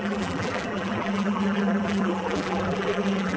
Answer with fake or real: fake